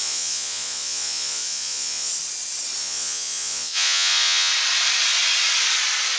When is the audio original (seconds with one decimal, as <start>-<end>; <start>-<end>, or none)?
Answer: 2.1-2.8; 4.5-6.2